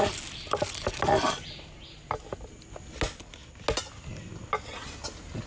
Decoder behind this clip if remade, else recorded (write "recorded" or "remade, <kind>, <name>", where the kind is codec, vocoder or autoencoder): recorded